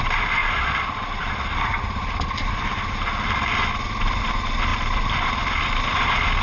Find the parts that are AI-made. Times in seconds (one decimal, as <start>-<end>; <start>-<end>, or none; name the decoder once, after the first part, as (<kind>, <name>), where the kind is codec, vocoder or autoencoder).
0.4-4.2 (vocoder, BigVGAN v2)